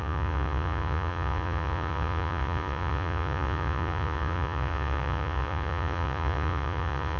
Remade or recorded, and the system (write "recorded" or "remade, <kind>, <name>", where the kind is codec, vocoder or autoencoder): remade, vocoder, Vocos